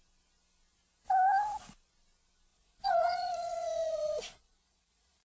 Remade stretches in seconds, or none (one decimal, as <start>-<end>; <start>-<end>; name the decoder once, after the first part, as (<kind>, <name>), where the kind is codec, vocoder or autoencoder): 2.5-5.4 (vocoder, Vocos)